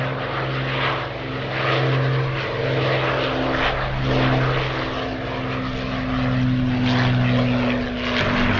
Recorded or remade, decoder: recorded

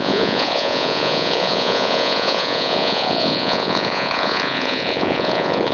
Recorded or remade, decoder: remade, vocoder, Vocos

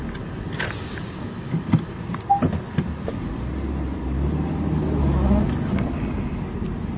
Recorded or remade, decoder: recorded